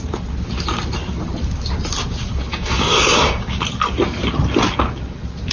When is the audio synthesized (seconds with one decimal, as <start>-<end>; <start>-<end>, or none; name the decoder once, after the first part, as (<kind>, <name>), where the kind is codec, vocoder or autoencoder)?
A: 2.5-3.6 (codec, DAC)